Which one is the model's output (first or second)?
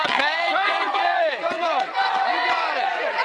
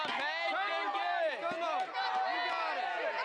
first